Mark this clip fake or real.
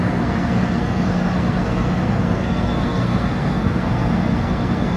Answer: fake